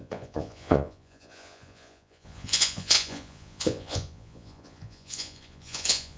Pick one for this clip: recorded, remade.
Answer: remade